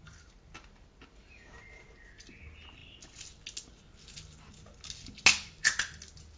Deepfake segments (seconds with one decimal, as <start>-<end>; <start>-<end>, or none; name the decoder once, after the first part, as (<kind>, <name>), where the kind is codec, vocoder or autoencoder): none